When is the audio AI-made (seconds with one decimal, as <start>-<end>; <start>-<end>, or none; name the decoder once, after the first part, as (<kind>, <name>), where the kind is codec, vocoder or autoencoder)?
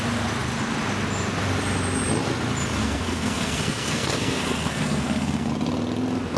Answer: 2.8-5.5 (codec, SNAC)